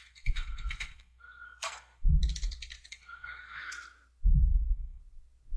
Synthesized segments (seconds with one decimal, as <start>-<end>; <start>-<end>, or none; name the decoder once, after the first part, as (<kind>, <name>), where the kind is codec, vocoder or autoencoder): 0.0-2.2 (codec, SNAC); 2.9-3.6; 4.5-5.0